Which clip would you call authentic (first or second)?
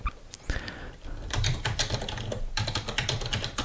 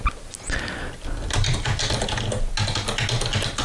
second